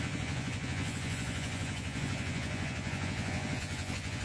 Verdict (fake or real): fake